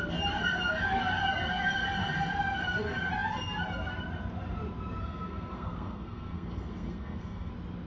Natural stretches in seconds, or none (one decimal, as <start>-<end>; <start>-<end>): 0.0-5.0; 7.5-7.9